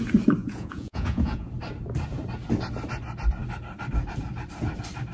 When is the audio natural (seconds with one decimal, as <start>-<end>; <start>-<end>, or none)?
0.0-0.4; 1.5-5.1

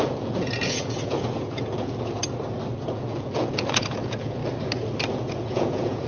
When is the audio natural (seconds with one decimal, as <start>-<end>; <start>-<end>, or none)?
2.2-2.9; 4.4-5.1

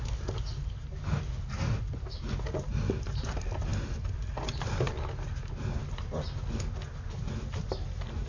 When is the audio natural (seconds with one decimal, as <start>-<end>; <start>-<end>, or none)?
0.0-8.3